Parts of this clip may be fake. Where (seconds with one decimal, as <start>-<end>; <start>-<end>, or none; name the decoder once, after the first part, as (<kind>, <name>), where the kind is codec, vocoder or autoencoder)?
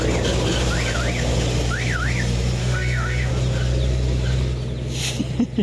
2.6-3.3 (autoencoder, DAC-VAE)